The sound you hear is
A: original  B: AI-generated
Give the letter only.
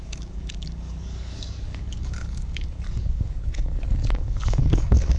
B